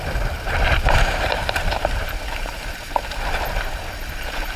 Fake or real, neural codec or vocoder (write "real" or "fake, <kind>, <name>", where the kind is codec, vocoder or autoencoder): fake, vocoder, BigVGAN v2